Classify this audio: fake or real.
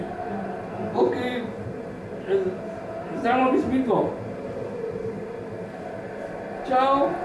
real